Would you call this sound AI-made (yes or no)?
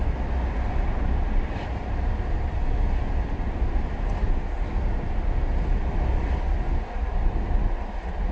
no